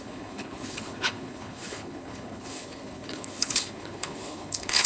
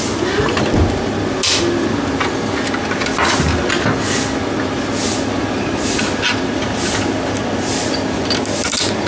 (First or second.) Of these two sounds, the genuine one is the second